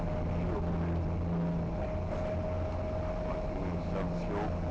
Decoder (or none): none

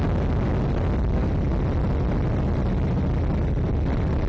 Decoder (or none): none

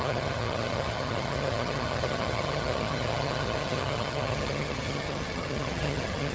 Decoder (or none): vocoder, HiFi-GAN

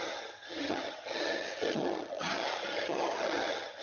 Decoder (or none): vocoder, HiFi-GAN